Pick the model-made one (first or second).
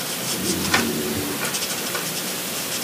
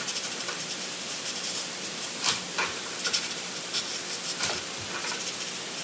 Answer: second